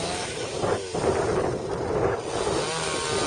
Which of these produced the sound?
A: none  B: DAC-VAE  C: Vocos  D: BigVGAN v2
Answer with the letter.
A